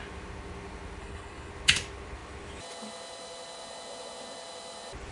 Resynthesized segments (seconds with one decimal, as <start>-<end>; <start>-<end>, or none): 1.0-1.5